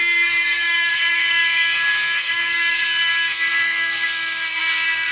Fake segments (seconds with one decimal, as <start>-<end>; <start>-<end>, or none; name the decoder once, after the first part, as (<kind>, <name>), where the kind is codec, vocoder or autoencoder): 0.0-5.1 (codec, SNAC)

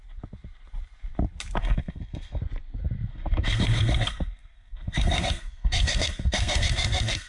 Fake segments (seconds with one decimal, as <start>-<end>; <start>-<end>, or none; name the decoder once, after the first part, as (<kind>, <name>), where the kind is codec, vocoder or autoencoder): 1.6-2.4 (codec, SNAC); 3.1-7.3

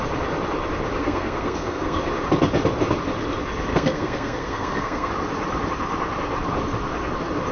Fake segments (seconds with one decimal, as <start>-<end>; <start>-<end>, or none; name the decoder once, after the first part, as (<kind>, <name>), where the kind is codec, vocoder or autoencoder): 1.0-2.0 (codec, SNAC); 3.7-5.1

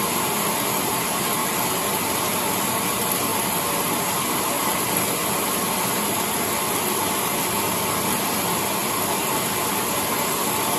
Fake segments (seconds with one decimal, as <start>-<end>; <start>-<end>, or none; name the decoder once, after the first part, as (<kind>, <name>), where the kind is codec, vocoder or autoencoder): none

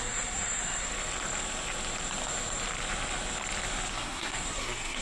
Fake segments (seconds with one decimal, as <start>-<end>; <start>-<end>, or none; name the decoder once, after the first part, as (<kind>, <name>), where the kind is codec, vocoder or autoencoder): 0.0-0.9 (codec, SNAC); 3.9-5.0

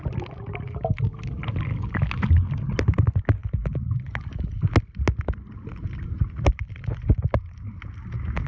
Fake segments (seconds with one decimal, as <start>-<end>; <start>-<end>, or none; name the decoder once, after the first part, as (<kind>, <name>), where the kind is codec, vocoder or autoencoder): none